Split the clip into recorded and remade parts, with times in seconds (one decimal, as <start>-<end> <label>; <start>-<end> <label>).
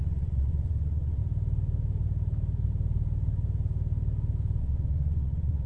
0.0-1.2 remade; 1.2-4.6 recorded; 4.6-5.7 remade